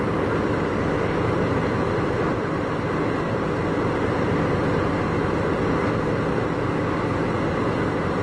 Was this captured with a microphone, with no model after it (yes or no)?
yes